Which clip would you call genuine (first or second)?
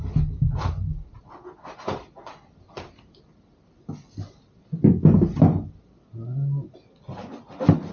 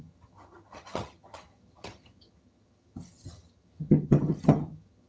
first